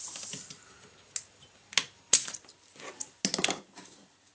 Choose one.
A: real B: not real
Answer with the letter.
A